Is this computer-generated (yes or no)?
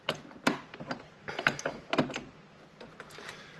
no